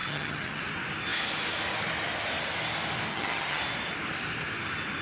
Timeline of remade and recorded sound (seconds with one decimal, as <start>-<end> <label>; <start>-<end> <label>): 0.0-0.6 remade; 0.6-3.1 recorded; 3.1-3.6 remade; 3.6-5.0 recorded